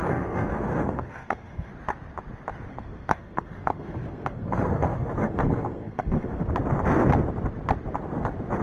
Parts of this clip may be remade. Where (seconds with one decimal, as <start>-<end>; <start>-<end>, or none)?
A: 0.0-1.7; 2.7-6.4